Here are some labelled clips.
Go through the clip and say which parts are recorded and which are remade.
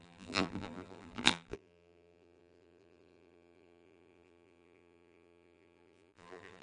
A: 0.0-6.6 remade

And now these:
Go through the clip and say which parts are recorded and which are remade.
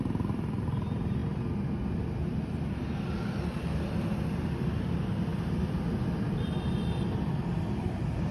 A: 0.0-1.2 remade; 1.2-4.3 recorded; 4.3-5.3 remade; 5.3-6.0 recorded; 6.0-8.3 remade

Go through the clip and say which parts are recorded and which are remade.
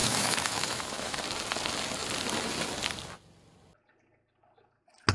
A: 0.0-1.2 remade; 1.2-5.1 recorded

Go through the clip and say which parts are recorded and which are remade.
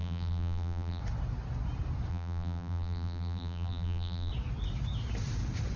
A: 0.0-1.0 remade; 1.0-2.1 recorded; 2.1-4.3 remade; 4.3-5.8 recorded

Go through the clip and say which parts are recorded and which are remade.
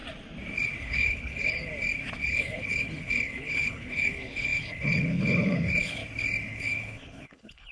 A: 0.0-0.8 recorded; 0.8-1.7 remade; 1.7-2.2 recorded; 2.2-6.0 remade; 6.0-6.5 recorded; 6.5-7.7 remade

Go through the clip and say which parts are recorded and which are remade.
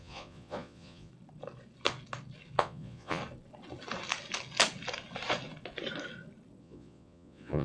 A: 0.0-1.1 remade; 1.1-2.6 recorded; 2.6-3.2 remade; 3.2-6.6 recorded; 6.6-7.6 remade